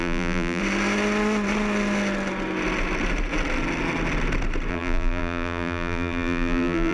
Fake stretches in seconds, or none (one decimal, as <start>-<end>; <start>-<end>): 0.0-0.6; 4.7-6.9